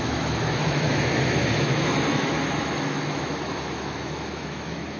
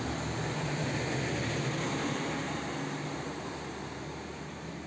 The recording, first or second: second